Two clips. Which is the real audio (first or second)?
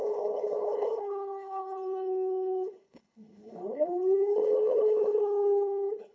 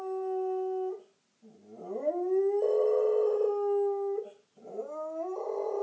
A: second